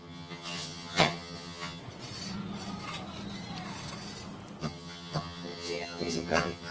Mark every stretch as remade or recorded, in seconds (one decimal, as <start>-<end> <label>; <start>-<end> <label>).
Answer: 0.0-1.8 remade; 1.8-4.6 recorded; 4.6-6.7 remade